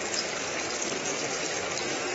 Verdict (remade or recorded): remade